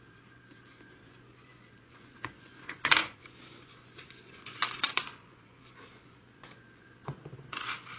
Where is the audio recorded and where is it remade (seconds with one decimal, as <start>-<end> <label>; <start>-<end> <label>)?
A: 0.0-8.0 remade